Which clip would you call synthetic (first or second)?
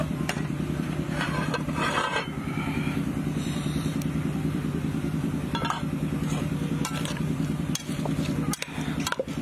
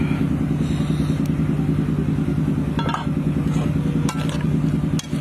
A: first